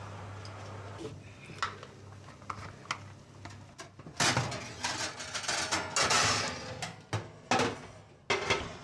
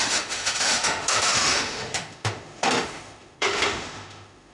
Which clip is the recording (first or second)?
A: first